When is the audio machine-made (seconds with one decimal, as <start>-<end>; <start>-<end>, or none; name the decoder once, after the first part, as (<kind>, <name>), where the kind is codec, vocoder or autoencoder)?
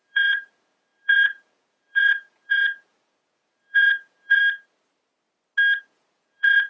0.0-4.4 (vocoder, Vocos); 5.8-6.7